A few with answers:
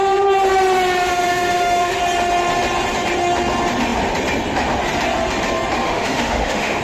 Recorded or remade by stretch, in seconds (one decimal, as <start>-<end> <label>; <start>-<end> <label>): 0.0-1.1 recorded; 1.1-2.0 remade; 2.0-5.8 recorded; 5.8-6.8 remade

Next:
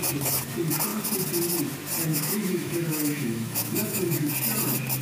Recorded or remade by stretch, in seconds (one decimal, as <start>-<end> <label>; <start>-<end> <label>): 0.0-2.1 recorded; 2.1-4.3 remade; 4.3-5.0 recorded

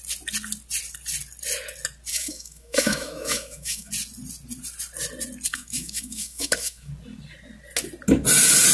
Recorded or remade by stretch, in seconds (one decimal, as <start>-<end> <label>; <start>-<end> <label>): 0.0-2.1 recorded; 2.1-3.9 remade; 3.9-5.5 recorded; 5.5-6.9 remade; 6.9-8.7 recorded

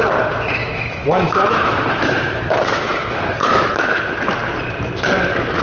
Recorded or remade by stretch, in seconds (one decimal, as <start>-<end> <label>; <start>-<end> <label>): 0.0-0.6 recorded; 0.6-4.0 remade; 4.0-5.6 recorded

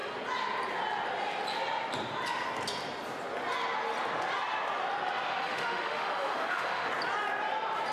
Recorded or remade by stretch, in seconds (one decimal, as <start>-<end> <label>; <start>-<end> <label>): 0.0-5.3 recorded; 5.3-6.9 remade; 6.9-7.9 recorded

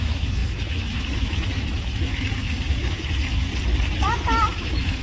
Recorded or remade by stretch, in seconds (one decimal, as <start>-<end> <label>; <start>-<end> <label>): 0.0-3.5 remade; 3.5-4.4 recorded; 4.4-5.0 remade